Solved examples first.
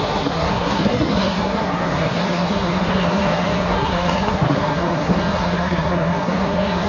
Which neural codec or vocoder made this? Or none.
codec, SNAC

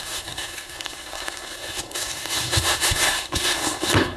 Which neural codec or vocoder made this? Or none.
codec, SNAC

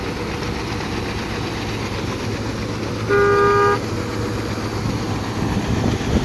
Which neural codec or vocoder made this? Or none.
none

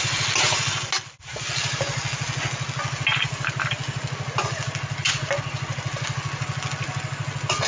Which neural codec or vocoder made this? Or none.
none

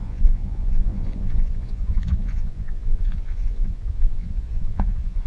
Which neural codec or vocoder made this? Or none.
vocoder, Vocos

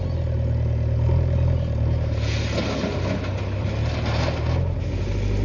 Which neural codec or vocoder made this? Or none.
none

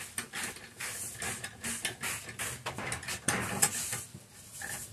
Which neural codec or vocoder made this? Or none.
none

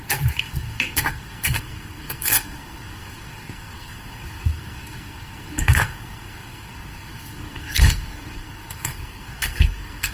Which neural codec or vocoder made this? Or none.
codec, SNAC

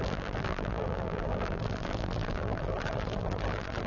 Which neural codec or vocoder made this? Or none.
vocoder, BigVGAN v2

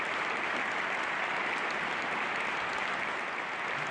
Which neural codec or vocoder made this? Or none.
none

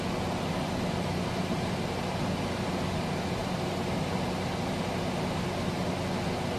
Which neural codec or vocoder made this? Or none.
none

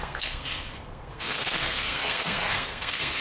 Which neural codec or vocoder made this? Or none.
codec, SNAC